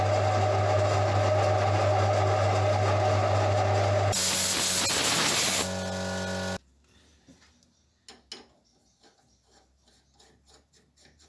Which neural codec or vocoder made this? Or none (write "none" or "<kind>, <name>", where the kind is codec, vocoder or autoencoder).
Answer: none